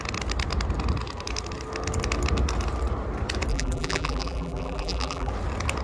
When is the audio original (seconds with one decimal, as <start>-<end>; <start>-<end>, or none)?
0.0-3.5; 5.3-5.8